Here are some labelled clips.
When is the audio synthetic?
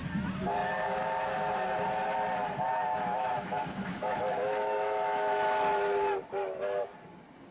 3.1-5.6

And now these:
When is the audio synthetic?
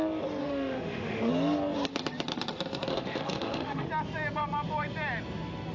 0.4-1.3; 2.9-3.9